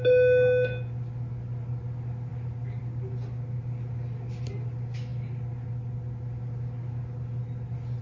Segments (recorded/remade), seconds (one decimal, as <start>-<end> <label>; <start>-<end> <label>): 0.0-8.0 recorded